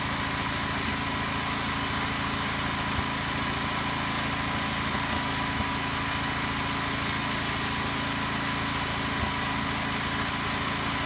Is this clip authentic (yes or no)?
yes